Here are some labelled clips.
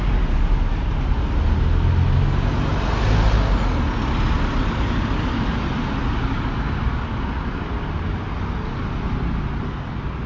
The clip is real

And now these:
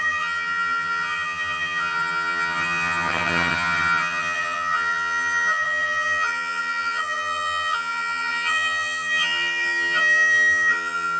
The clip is fake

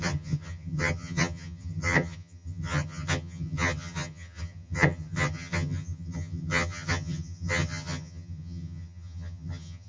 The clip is fake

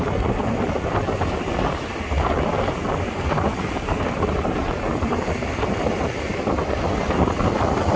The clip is real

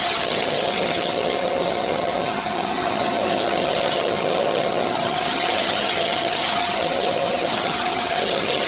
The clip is fake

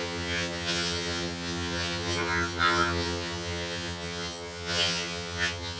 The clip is fake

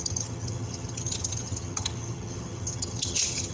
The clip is fake